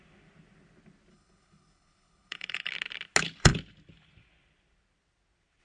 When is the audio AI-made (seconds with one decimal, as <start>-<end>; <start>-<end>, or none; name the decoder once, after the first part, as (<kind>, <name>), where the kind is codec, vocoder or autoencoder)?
1.1-2.7 (codec, HILCodec)